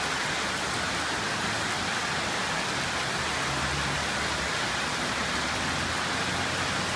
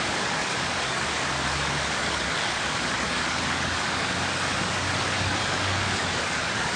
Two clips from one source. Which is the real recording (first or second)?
first